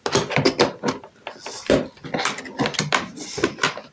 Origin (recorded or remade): recorded